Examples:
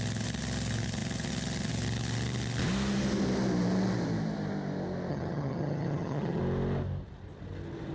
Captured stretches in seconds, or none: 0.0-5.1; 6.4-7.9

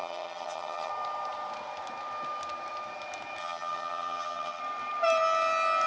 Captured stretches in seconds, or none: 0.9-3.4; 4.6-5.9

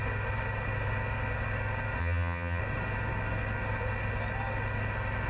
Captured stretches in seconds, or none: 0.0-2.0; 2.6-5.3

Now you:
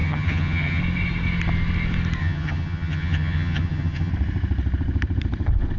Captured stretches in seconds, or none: 0.8-2.2; 4.1-5.8